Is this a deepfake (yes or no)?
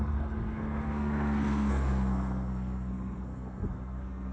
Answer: yes